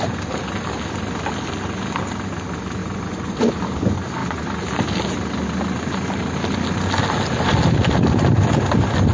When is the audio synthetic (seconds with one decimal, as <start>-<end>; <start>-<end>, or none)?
2.8-3.5